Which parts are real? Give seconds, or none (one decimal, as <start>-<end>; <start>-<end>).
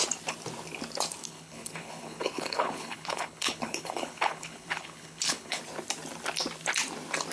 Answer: 0.0-1.2; 5.6-7.3